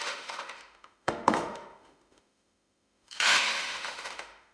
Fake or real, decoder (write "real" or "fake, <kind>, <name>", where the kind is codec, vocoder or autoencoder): fake, autoencoder, DAC-VAE